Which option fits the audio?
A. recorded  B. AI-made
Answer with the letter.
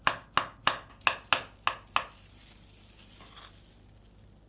A